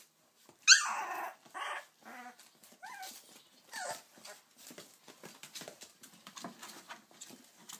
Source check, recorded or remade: recorded